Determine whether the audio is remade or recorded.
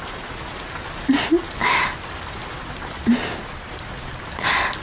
recorded